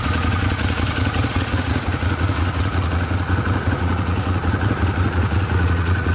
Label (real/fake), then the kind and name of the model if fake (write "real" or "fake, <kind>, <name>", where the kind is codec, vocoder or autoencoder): fake, vocoder, Vocos